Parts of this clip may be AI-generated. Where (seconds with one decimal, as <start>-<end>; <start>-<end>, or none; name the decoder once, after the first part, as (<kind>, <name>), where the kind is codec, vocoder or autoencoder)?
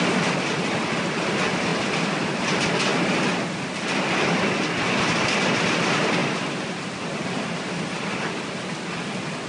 none